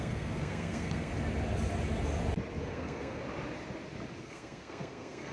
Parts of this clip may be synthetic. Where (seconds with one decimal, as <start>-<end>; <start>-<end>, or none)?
0.0-1.1; 2.6-3.2; 4.2-5.3